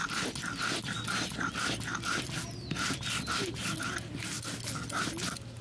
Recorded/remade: recorded